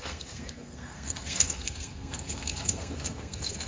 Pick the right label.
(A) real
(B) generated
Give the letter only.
B